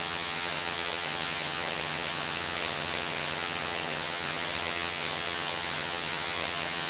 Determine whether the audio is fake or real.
fake